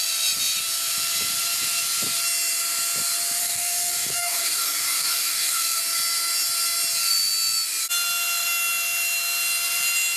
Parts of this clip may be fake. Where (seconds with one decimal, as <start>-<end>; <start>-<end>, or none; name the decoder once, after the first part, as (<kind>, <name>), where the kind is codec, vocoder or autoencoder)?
3.4-5.8 (codec, DAC)